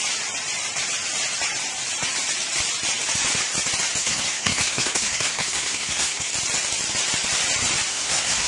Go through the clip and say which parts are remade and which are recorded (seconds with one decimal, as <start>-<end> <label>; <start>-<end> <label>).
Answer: 0.0-4.0 recorded; 4.0-6.3 remade; 6.3-7.9 recorded; 7.9-8.5 remade